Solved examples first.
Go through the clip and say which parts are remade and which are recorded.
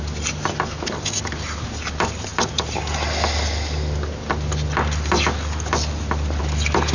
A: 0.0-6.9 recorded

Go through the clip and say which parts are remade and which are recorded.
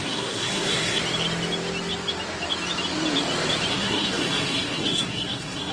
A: 0.0-1.0 remade; 1.0-3.7 recorded; 3.7-5.7 remade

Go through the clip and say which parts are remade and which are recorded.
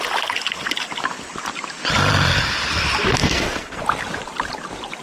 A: 0.0-3.2 recorded; 3.2-3.8 remade; 3.8-5.0 recorded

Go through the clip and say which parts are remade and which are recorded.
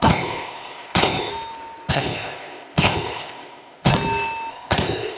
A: 0.0-1.3 remade; 1.3-1.9 recorded; 1.9-3.9 remade; 3.9-4.5 recorded; 4.5-5.2 remade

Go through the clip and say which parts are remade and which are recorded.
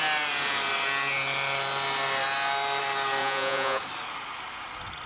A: 0.0-3.2 recorded; 3.2-3.8 remade; 3.8-5.1 recorded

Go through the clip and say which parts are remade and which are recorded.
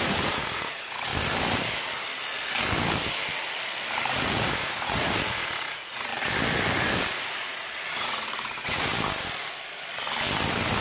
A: 0.0-1.1 remade; 1.1-4.1 recorded; 4.1-6.1 remade; 6.1-7.2 recorded; 7.2-8.9 remade; 8.9-10.8 recorded